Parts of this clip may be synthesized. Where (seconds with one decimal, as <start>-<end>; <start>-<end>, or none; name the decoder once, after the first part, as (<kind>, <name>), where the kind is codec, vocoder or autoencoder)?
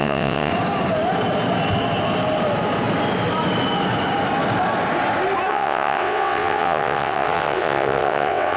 0.0-0.5 (vocoder, WaveNeXt); 5.5-8.6